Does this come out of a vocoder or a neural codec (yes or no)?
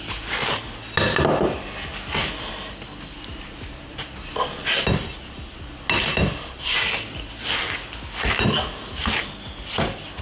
no